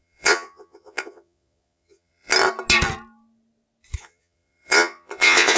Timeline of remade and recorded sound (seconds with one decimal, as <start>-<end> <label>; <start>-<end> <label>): 0.0-2.3 remade; 2.3-4.0 recorded; 4.0-5.6 remade